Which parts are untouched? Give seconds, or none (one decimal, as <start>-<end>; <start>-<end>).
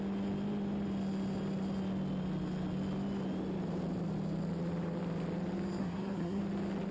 0.0-5.8; 6.4-6.9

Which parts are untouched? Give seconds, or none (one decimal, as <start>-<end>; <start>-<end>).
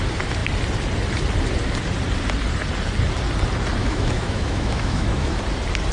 0.0-3.8; 5.4-5.9